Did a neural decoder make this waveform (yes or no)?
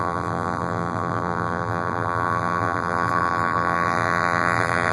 yes